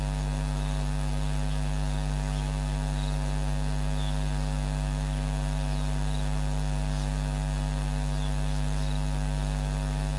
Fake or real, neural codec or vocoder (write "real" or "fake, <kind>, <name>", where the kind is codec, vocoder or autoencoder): real